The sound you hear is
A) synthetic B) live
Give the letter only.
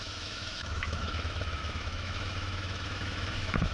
A